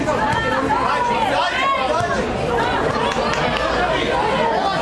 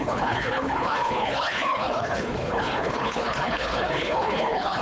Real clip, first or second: first